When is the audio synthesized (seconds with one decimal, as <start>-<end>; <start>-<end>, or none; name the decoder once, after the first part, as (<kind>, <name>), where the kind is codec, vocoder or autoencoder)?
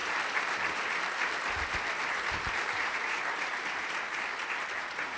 2.7-3.2 (vocoder, Vocos); 4.8-5.2